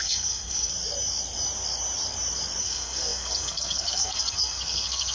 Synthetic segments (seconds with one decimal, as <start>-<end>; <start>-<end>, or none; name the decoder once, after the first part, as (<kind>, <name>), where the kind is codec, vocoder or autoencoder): 0.0-0.7 (codec, SNAC); 2.6-5.1